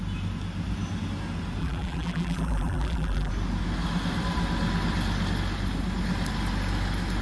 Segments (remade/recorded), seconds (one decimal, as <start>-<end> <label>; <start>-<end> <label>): 0.0-1.6 recorded; 1.6-3.3 remade; 3.3-7.2 recorded